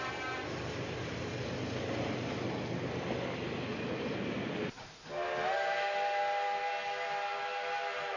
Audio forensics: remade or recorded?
recorded